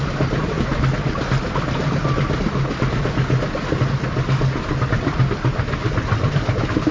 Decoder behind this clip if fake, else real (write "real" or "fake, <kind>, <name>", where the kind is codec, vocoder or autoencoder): fake, vocoder, BigVGAN v2